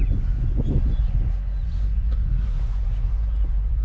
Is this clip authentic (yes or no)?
no